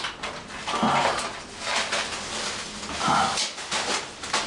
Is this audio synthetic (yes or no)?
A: no